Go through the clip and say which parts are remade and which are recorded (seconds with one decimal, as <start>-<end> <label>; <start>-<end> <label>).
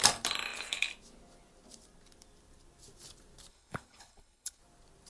0.0-3.5 recorded; 3.5-4.6 remade; 4.6-5.1 recorded